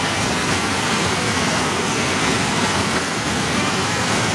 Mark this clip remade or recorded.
remade